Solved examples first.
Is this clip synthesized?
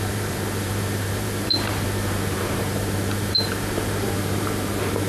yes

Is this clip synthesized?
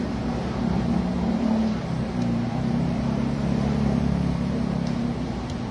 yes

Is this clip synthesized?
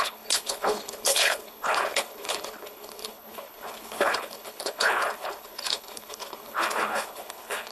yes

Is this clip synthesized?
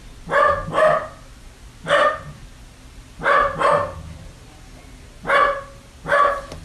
no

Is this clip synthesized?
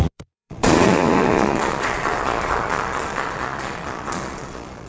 yes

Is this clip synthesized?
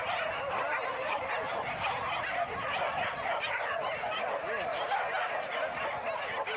no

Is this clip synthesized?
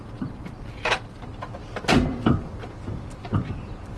yes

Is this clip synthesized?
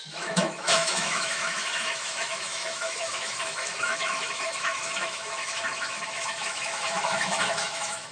yes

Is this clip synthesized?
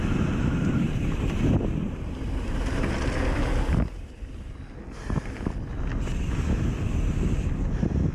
no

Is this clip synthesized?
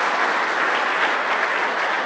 no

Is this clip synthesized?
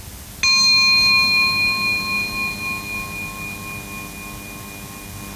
no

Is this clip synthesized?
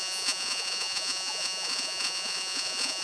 yes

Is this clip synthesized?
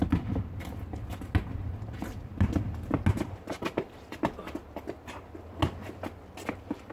no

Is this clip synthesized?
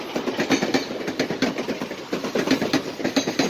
no